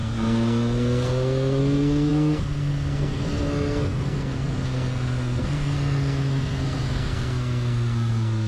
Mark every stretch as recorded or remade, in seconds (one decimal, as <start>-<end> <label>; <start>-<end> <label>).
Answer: 0.0-8.5 remade